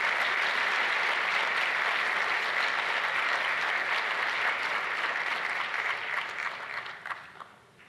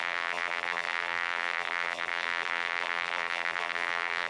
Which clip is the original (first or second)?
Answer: first